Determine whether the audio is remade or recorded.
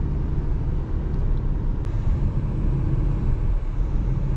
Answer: recorded